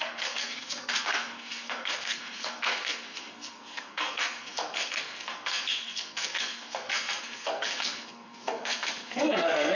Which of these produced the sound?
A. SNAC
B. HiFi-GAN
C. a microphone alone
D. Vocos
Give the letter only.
A